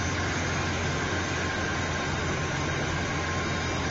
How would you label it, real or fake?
real